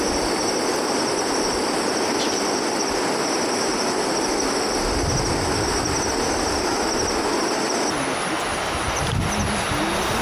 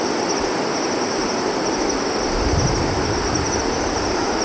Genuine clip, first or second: first